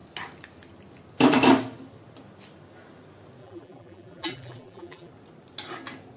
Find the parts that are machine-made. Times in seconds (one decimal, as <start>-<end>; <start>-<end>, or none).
3.4-5.1